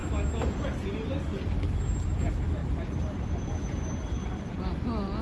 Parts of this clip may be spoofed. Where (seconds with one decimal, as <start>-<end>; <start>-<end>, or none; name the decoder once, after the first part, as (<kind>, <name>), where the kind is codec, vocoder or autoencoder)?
2.6-4.7 (vocoder, BigVGAN v2)